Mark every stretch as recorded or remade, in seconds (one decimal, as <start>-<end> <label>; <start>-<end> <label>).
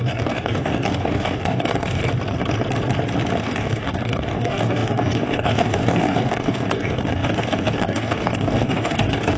0.0-2.0 remade; 2.0-3.4 recorded; 3.4-9.4 remade